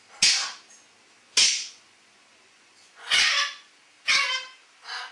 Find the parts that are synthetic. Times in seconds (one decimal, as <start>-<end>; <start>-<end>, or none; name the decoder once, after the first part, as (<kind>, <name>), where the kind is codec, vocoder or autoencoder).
1.4-3.8 (vocoder, Vocos)